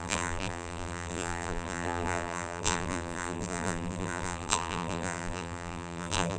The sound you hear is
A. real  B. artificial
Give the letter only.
B